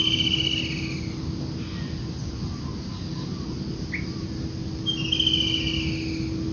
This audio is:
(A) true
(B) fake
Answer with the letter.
A